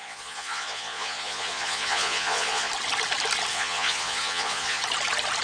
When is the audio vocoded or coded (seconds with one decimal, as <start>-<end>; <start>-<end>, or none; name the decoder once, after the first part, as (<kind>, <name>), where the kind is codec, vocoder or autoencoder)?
0.0-2.7 (vocoder, Vocos); 3.5-4.8